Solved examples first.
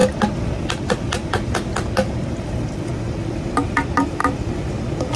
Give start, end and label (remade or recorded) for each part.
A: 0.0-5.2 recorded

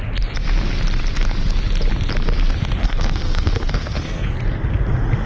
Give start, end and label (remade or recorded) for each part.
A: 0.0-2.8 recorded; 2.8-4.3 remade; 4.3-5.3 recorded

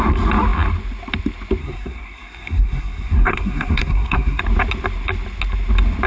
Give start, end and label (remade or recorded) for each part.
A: 0.0-1.6 recorded; 1.6-4.4 remade; 4.4-6.1 recorded